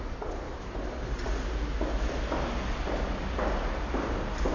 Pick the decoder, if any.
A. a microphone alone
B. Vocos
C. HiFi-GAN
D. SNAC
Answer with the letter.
A